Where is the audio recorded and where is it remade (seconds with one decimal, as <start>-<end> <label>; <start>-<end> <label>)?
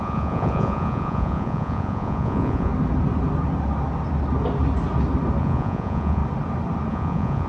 0.0-2.7 remade; 2.7-5.4 recorded; 5.4-6.2 remade; 6.2-6.9 recorded; 6.9-7.5 remade